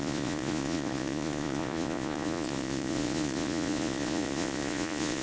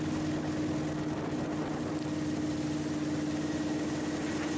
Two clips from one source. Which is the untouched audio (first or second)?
second